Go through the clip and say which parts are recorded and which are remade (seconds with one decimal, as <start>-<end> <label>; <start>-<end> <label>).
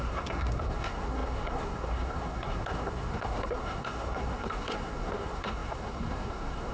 0.0-6.7 remade